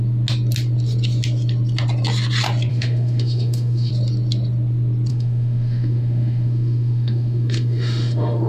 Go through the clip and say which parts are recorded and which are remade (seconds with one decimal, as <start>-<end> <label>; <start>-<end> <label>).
0.0-2.7 recorded; 2.7-3.9 remade; 3.9-5.1 recorded; 5.1-8.5 remade